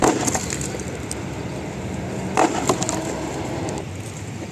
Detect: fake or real real